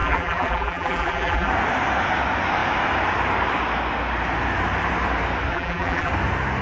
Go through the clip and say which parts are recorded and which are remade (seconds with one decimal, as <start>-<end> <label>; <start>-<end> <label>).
0.0-1.5 remade; 1.5-5.5 recorded; 5.5-6.1 remade; 6.1-6.6 recorded